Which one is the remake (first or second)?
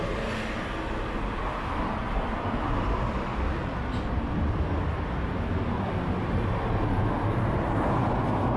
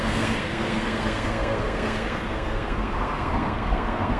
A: second